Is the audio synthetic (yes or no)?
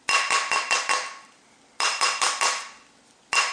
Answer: no